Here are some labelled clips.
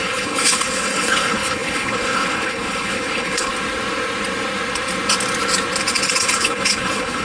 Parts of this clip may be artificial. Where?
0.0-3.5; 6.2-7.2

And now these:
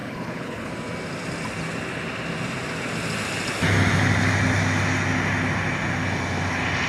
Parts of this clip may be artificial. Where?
0.0-0.7

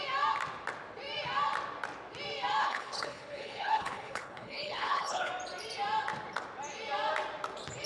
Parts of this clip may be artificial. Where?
2.6-5.3

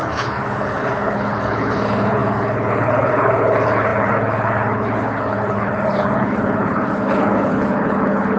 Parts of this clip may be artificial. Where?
0.0-8.4

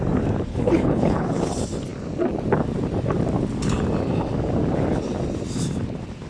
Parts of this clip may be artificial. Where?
0.5-1.5

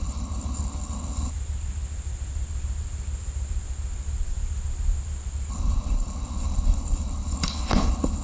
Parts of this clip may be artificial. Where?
0.0-1.3; 5.5-8.2

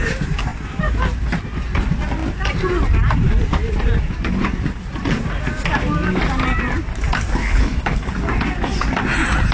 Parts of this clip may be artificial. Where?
7.4-8.1